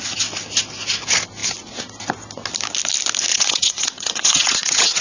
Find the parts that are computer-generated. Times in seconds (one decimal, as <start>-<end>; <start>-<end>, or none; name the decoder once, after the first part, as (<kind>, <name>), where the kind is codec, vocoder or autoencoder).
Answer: 3.3-5.0 (vocoder, WaveNeXt)